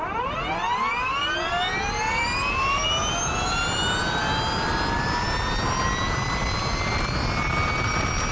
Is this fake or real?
real